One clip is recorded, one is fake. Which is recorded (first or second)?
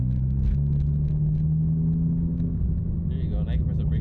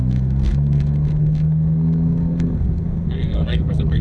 first